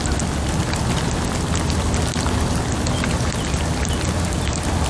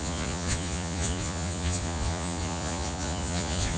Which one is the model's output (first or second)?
second